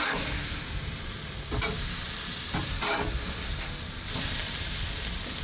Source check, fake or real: real